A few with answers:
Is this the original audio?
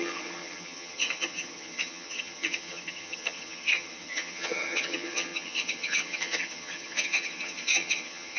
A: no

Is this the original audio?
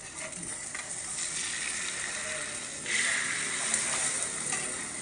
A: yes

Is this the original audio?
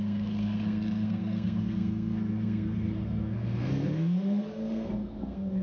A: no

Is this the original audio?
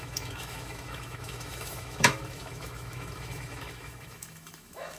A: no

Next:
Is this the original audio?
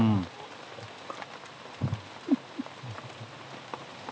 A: yes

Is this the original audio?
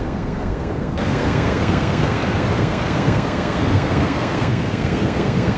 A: no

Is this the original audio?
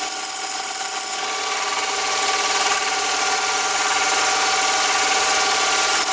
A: yes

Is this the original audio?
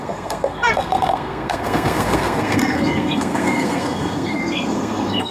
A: no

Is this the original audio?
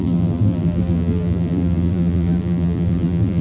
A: no